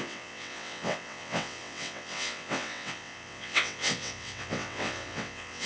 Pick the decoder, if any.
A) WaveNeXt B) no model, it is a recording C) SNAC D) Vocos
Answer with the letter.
A